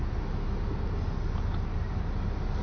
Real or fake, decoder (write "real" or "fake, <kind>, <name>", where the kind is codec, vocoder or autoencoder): real